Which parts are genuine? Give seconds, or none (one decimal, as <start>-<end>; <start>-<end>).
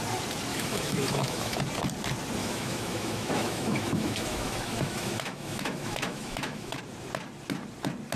0.0-0.5; 1.6-2.4; 6.8-8.2